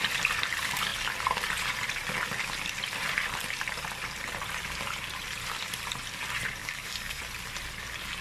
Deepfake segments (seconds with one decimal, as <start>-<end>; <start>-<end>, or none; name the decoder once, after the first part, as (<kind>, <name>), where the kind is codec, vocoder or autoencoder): 6.6-7.2 (codec, DAC)